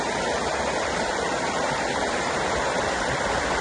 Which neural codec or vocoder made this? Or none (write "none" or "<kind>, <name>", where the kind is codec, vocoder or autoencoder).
vocoder, BigVGAN v2